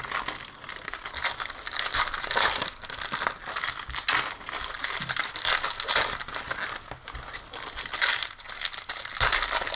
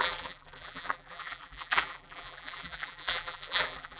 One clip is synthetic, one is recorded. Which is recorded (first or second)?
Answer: first